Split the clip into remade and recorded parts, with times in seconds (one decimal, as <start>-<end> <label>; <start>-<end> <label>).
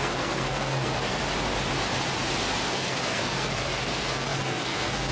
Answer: 0.0-1.2 remade; 1.2-2.7 recorded; 2.7-5.1 remade